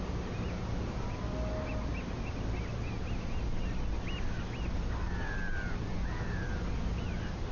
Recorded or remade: recorded